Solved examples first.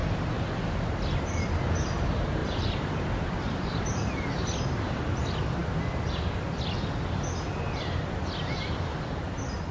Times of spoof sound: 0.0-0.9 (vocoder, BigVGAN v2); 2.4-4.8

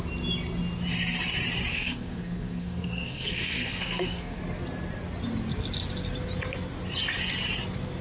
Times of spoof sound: 1.7-4.4 (codec, SNAC)

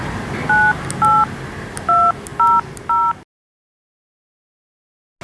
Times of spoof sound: none

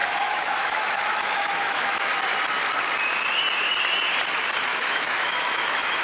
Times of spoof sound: 0.0-2.1 (autoencoder, DAC-VAE); 4.7-6.0

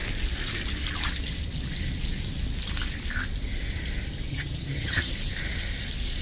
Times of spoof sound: 4.3-5.1 (vocoder, HiFi-GAN)

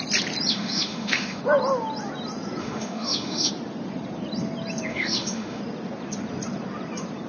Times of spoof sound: 0.5-1.4 (autoencoder, DAC-VAE); 2.6-3.5; 4.9-5.6

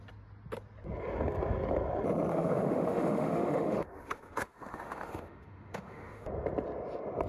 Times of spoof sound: 2.3-6.3 (autoencoder, DAC-VAE)